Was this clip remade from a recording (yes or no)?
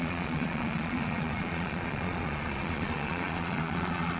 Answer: yes